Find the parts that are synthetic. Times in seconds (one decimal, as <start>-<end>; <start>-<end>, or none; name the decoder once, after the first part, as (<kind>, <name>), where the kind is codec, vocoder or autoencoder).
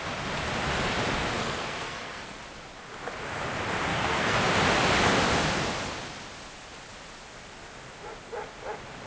1.4-2.4 (codec, SNAC); 3.9-4.4